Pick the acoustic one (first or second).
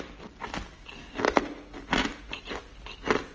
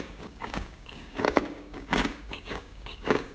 first